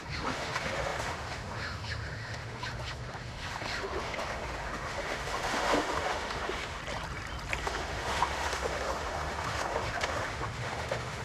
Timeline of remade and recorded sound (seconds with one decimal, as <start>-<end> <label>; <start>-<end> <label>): 0.0-6.8 remade; 6.8-7.6 recorded; 7.6-11.2 remade